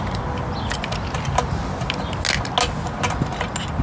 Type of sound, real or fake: real